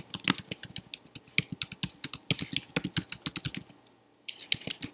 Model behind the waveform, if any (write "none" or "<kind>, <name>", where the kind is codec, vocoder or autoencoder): none